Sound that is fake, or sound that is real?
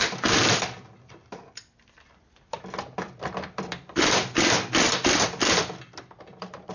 fake